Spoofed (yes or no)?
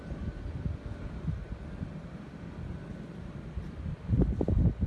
no